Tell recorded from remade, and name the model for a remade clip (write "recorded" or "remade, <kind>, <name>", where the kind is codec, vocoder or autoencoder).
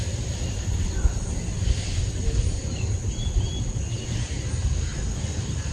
recorded